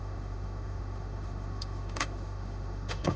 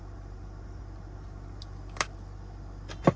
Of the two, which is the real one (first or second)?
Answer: second